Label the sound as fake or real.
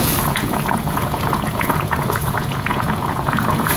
fake